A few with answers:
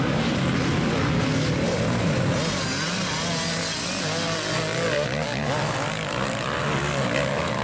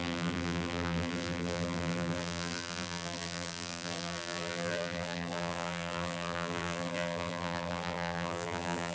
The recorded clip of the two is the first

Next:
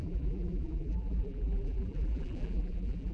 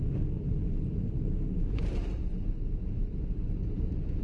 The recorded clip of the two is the second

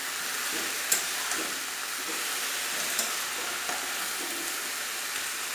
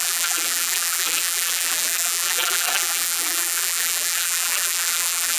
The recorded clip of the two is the first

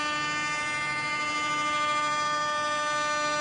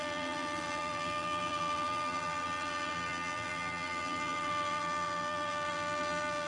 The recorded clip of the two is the first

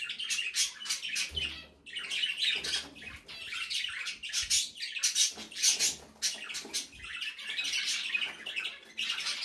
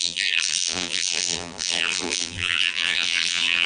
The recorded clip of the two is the first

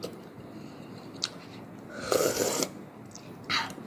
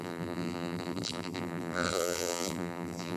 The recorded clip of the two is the first